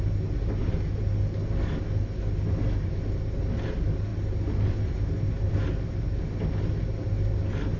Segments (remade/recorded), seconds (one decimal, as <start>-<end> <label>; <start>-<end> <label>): 0.0-7.8 recorded